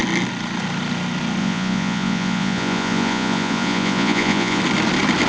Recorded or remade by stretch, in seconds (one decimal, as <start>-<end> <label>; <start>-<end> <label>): 0.0-1.4 recorded; 1.4-4.6 remade; 4.6-5.3 recorded

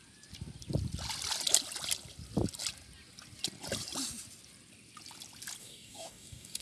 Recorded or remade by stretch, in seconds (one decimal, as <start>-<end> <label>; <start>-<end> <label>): 0.0-5.6 recorded; 5.6-6.6 remade

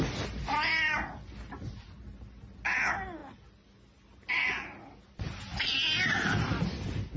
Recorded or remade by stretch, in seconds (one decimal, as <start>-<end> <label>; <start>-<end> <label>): 0.0-7.2 recorded